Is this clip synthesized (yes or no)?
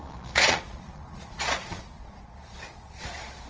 yes